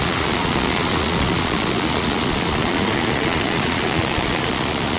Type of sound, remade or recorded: remade